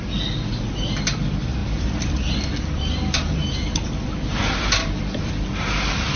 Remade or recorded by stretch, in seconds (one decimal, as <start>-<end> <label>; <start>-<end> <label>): 0.0-1.6 recorded; 1.6-5.3 remade; 5.3-6.2 recorded